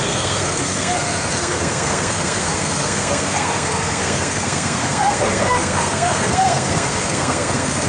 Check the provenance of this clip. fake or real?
fake